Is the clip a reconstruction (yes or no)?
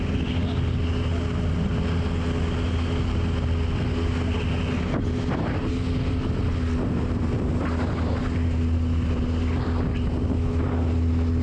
no